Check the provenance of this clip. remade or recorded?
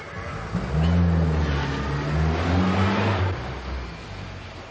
recorded